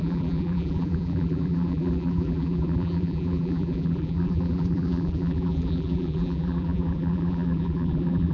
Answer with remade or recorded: remade